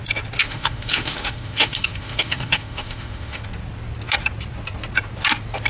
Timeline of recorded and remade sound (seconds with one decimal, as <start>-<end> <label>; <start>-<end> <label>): 0.0-0.4 recorded; 0.4-3.4 remade; 3.4-5.7 recorded